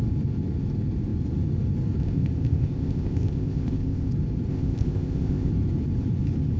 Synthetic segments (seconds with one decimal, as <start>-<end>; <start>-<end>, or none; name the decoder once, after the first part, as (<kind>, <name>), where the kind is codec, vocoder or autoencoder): 2.0-4.1 (codec, ZipCodec); 4.5-5.5